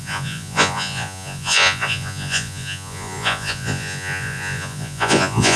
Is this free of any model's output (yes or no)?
no